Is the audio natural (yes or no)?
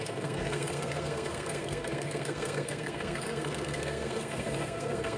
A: no